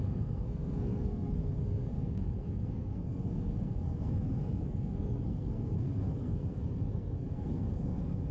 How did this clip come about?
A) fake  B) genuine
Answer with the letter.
A